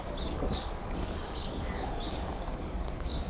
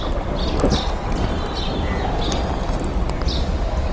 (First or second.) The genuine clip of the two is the second